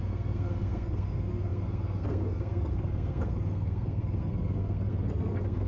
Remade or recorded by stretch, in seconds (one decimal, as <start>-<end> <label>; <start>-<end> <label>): 0.0-5.7 remade